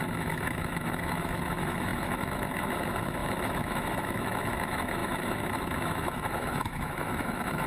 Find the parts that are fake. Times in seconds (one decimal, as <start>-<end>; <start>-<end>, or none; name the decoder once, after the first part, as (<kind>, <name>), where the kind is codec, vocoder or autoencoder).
0.0-7.7 (autoencoder, DAC-VAE)